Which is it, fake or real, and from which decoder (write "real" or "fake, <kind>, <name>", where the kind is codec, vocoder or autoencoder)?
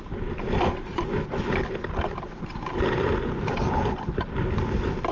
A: real